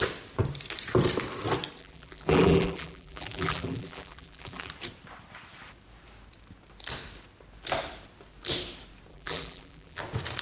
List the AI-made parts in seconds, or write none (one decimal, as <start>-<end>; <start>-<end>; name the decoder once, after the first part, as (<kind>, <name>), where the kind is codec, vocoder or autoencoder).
1.8-4.7 (vocoder, BigVGAN v2); 9.1-10.0